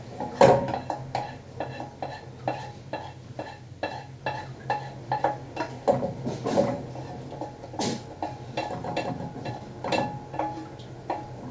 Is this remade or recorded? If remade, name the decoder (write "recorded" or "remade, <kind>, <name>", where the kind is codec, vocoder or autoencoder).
recorded